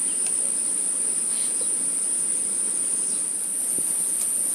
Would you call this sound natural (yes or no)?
yes